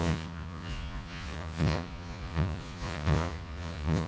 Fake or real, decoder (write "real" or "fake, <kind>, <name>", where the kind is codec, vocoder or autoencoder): fake, vocoder, Vocos